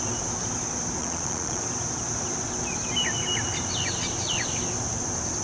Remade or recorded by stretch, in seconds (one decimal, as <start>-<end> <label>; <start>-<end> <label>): 0.0-1.0 recorded; 1.0-1.6 remade; 1.6-5.4 recorded